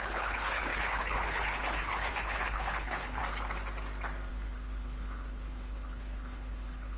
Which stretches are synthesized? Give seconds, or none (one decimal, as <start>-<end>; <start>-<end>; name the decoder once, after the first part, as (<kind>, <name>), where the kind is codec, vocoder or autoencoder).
0.0-3.2 (codec, HILCodec); 4.3-7.0